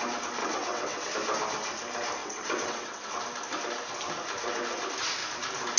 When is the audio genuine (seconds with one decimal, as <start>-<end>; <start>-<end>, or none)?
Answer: 0.0-0.4; 1.1-2.2; 3.2-5.8